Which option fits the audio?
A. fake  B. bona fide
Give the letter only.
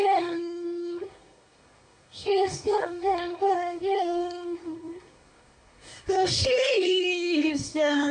A